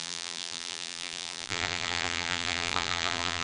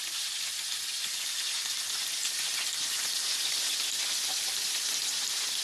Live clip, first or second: second